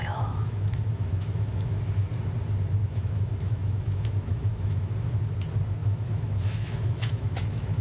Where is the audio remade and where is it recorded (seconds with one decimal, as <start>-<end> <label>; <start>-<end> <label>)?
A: 0.0-1.8 remade; 1.8-2.8 recorded; 2.8-5.2 remade; 5.2-5.8 recorded; 5.8-7.8 remade